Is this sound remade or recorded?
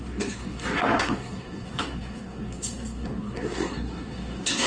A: remade